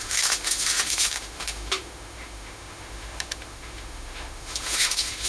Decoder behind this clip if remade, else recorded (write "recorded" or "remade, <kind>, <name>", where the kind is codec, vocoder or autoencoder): remade, autoencoder, DAC-VAE